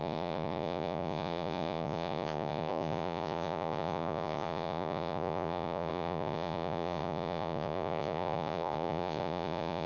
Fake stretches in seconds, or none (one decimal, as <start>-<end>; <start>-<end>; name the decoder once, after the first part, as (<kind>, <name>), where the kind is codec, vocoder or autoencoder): 0.0-9.9 (vocoder, Vocos)